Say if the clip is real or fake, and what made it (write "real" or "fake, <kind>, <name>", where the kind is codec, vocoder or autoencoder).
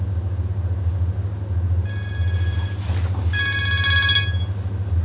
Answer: real